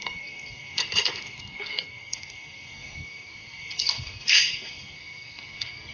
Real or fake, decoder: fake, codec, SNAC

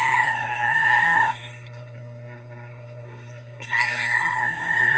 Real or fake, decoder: fake, codec, SNAC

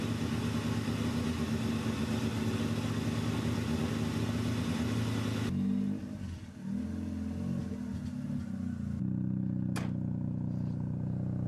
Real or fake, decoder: real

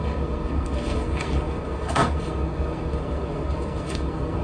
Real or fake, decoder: fake, codec, SNAC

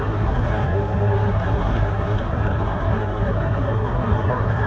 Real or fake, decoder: fake, codec, SNAC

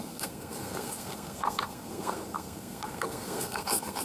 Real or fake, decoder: fake, codec, SNAC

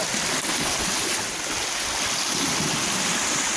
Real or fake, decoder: real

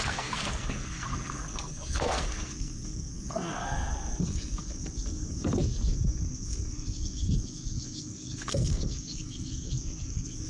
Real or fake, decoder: fake, codec, SNAC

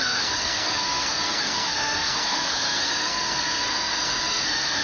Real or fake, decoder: fake, codec, SNAC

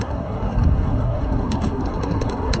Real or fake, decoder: fake, codec, SNAC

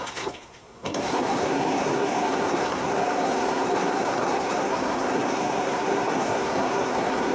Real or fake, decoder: fake, codec, SNAC